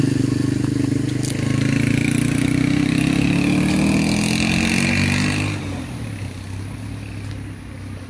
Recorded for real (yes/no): yes